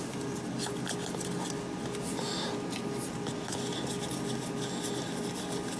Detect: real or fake real